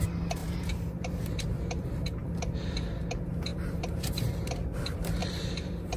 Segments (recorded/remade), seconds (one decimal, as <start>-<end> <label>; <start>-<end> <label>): 0.0-0.4 recorded; 0.4-1.6 remade; 1.6-3.5 recorded; 3.5-4.5 remade; 4.5-5.2 recorded; 5.2-6.0 remade